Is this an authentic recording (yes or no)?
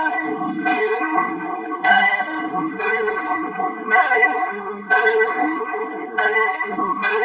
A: no